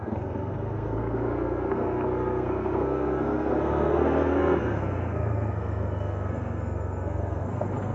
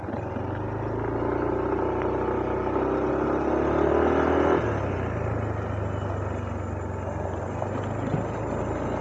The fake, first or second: first